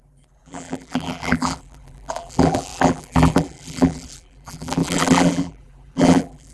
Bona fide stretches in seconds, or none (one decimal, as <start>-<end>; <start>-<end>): none